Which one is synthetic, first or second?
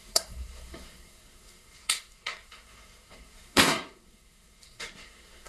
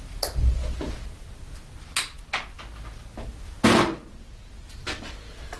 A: first